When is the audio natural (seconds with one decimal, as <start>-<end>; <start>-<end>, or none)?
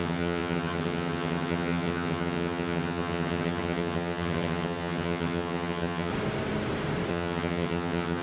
6.1-7.1